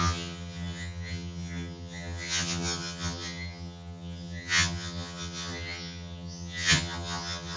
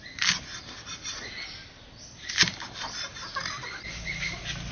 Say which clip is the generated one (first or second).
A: first